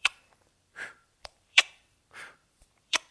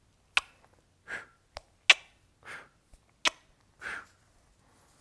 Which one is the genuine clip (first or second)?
second